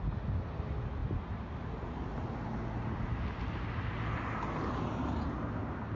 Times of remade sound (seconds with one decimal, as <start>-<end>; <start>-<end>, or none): none